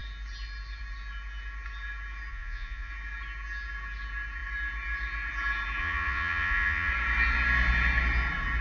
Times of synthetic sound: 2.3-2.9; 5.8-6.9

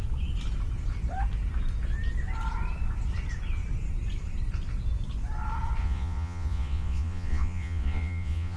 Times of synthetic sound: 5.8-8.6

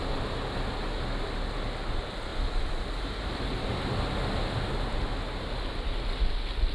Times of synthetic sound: none

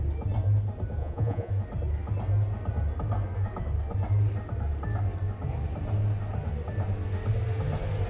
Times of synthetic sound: 1.0-1.5

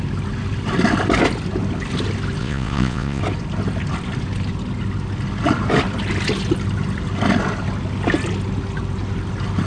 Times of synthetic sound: 2.4-3.2

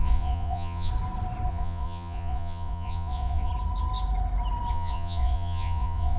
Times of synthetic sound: 0.0-0.9; 1.5-3.5; 4.7-6.2

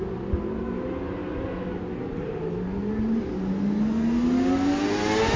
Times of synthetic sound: none